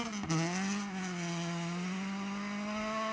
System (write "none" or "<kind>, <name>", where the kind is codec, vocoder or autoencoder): none